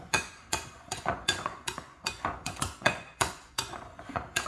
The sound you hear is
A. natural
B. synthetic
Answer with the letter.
B